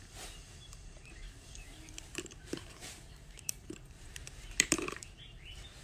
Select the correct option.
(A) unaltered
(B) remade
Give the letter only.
B